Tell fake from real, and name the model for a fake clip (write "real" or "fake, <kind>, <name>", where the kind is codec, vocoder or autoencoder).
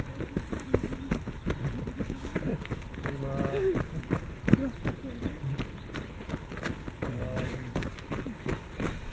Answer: real